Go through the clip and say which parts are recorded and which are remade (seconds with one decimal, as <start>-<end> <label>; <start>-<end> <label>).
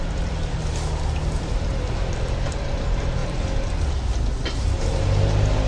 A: 0.0-5.7 recorded